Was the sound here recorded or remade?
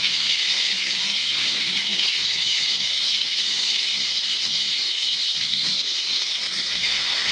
remade